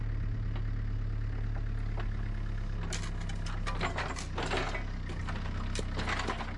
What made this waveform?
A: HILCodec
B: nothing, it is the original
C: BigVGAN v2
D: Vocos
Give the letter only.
B